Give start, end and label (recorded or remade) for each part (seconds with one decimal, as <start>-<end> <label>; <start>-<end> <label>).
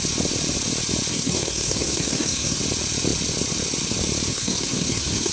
0.0-1.1 recorded; 1.1-2.6 remade; 2.6-4.3 recorded; 4.3-5.3 remade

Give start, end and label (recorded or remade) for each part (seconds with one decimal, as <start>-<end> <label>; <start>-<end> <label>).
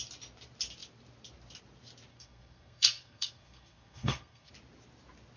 0.0-2.1 recorded; 2.1-4.5 remade; 4.5-5.4 recorded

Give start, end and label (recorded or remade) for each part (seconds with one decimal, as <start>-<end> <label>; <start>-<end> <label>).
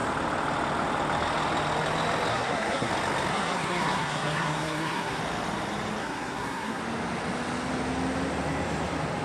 0.0-2.3 recorded; 2.3-2.9 remade; 2.9-3.3 recorded; 3.3-5.2 remade; 5.2-6.0 recorded; 6.0-6.8 remade; 6.8-9.2 recorded